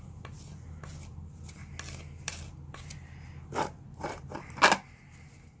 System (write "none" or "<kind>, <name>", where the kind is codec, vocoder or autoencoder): none